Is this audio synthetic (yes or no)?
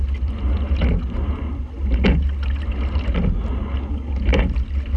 no